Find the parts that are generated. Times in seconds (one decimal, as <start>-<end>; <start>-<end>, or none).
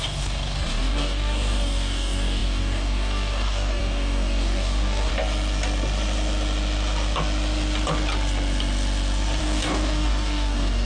0.0-5.1; 9.4-10.9